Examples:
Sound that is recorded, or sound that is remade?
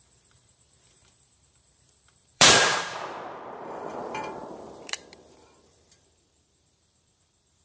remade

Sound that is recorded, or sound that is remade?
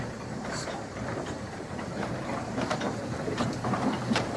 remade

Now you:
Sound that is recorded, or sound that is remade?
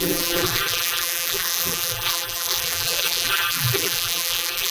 remade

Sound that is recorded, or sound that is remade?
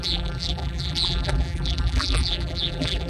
remade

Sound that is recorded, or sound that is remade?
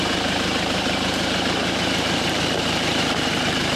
remade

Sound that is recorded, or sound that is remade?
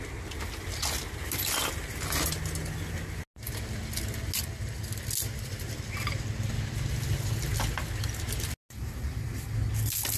recorded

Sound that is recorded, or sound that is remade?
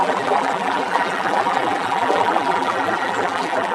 remade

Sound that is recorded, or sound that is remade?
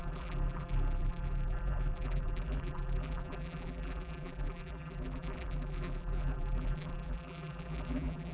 remade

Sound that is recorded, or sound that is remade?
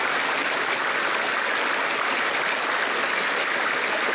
recorded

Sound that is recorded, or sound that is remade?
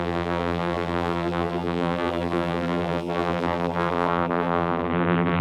remade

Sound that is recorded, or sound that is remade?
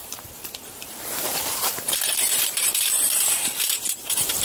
remade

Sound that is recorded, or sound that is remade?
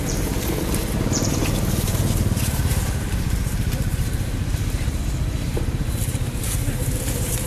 remade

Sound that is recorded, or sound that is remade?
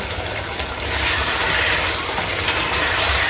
recorded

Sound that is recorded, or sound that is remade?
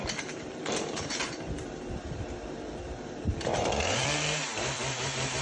remade